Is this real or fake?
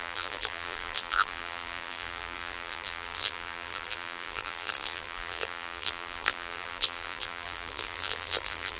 fake